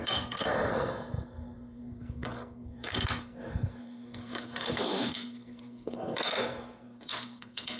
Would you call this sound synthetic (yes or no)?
yes